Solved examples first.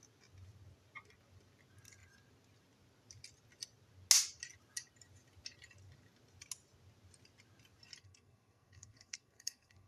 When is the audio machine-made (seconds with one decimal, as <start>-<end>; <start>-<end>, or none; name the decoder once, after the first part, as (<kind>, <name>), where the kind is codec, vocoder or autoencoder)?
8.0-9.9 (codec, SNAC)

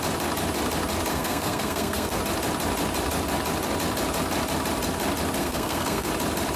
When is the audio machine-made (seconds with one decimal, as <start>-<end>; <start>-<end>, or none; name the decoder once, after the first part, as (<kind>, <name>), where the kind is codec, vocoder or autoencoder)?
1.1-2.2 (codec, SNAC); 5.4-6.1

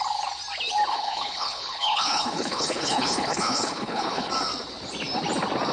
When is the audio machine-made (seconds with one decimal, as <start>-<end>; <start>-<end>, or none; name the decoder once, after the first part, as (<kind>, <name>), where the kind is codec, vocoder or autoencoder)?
0.9-4.3 (codec, HILCodec)